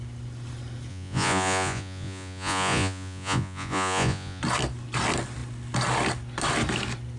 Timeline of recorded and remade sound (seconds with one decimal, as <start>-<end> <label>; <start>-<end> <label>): 0.0-0.9 recorded; 0.9-4.4 remade; 4.4-7.2 recorded